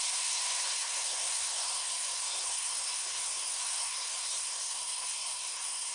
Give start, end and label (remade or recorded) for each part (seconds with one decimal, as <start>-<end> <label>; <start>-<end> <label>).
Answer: 0.0-5.9 remade